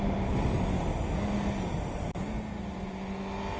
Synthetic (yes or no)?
no